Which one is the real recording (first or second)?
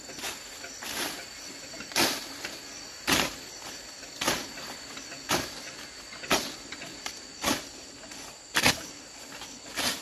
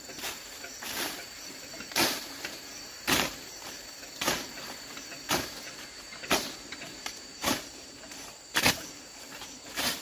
first